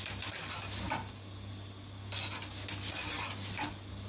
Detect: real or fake real